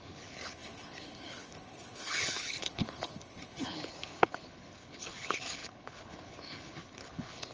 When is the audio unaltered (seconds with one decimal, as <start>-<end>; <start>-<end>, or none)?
none